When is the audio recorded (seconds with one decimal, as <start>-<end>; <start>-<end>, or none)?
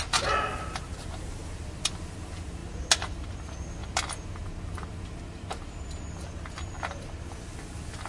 0.0-8.1